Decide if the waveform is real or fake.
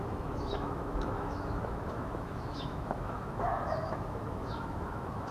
fake